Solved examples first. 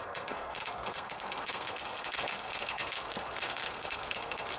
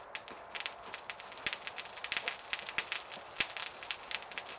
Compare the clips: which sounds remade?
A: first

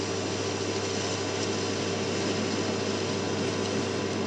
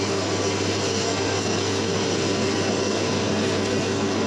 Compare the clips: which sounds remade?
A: second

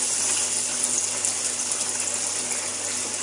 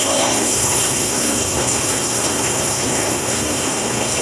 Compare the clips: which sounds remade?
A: second